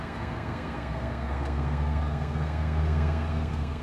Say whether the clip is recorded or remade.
remade